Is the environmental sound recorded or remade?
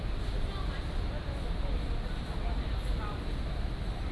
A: recorded